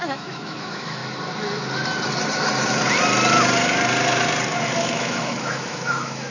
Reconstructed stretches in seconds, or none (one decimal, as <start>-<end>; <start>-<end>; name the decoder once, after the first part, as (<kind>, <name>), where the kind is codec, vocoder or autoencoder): 0.0-1.0 (autoencoder, DAC-VAE); 4.8-6.3